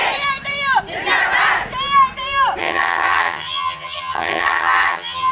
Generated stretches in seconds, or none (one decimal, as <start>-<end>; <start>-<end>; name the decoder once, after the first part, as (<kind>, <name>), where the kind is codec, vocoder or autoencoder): 2.6-5.3 (vocoder, HiFi-GAN)